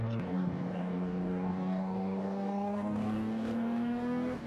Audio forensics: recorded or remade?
remade